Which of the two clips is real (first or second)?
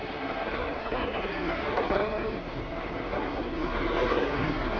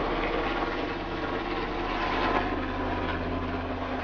second